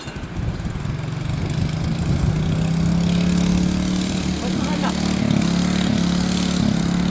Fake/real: real